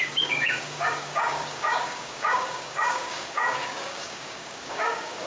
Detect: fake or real fake